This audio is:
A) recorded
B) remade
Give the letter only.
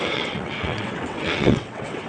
B